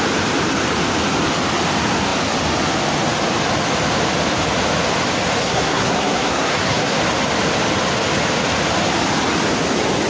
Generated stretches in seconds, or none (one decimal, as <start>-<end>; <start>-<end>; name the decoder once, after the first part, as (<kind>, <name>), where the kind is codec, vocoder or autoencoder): 5.4-7.0 (codec, SNAC)